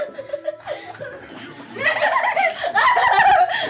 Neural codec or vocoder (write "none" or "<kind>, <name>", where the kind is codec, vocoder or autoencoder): none